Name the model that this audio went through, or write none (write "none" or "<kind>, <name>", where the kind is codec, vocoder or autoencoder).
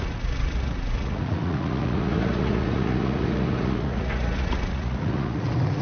vocoder, Vocos